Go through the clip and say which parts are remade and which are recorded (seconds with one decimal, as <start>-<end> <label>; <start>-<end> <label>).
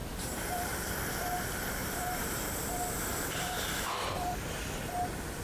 0.0-0.6 remade; 0.6-1.8 recorded; 1.8-2.5 remade; 2.5-3.1 recorded; 3.1-4.6 remade; 4.6-5.4 recorded